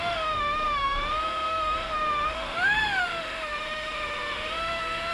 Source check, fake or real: fake